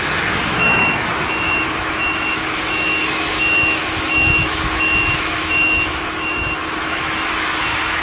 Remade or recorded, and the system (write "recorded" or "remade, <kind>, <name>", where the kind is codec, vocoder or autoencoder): remade, autoencoder, DAC-VAE